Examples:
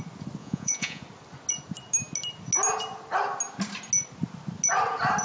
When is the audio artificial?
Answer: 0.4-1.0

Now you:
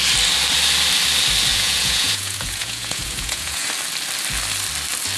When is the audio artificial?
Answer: 1.5-3.7

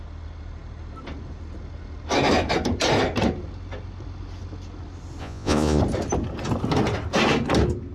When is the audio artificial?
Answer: 5.2-5.8

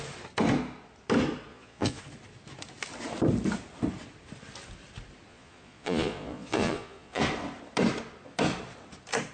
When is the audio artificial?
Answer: 1.5-2.0; 5.3-7.2

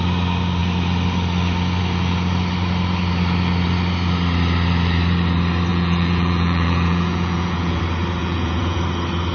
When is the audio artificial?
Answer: 5.7-7.8; 8.2-8.8